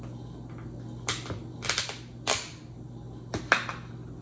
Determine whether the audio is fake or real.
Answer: real